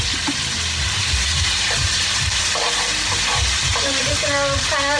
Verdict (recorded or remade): recorded